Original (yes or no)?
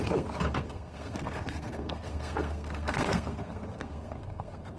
no